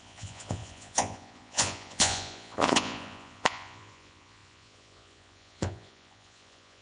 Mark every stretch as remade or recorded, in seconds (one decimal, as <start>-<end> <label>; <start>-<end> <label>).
0.0-6.8 remade